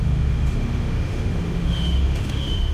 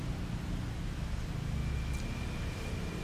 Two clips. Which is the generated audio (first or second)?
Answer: first